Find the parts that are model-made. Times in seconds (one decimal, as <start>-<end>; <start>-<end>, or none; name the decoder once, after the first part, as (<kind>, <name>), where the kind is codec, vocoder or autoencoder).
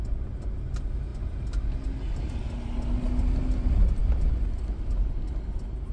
none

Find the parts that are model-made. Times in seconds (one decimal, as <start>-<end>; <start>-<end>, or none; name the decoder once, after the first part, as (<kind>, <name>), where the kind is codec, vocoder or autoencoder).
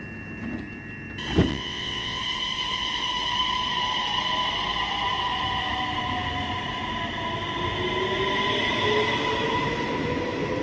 1.5-2.2 (vocoder, WaveNeXt)